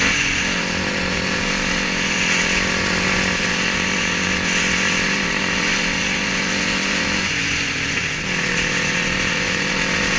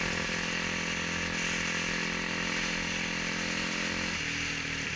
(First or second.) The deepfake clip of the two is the first